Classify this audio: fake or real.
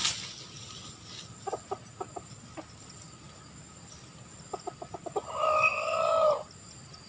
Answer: real